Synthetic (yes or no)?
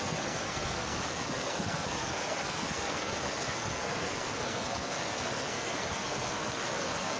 yes